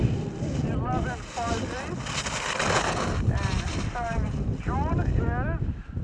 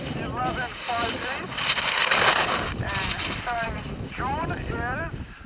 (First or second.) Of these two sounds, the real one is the first